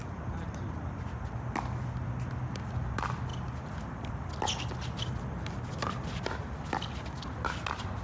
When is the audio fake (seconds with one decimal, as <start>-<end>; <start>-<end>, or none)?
none